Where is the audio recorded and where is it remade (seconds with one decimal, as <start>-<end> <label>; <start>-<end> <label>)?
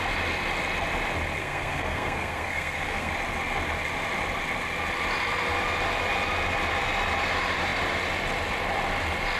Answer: 0.0-1.4 recorded; 1.4-3.1 remade; 3.1-9.4 recorded